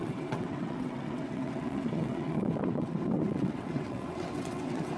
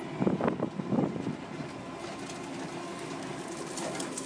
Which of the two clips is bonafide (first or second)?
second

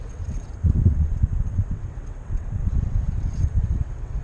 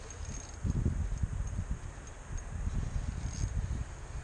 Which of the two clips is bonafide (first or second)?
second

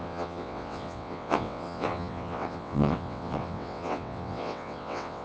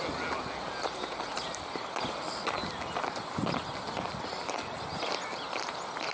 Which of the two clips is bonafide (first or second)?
second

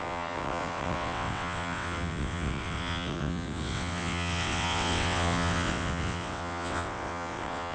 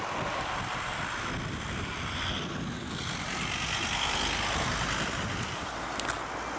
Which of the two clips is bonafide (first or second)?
second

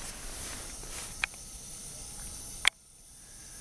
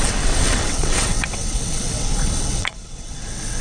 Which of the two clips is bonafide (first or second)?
first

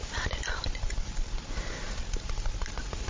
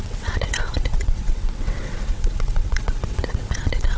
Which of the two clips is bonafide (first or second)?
first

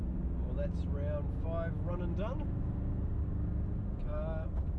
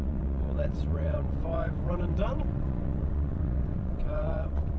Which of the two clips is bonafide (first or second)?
first